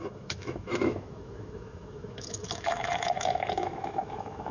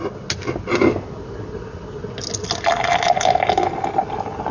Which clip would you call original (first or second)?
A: second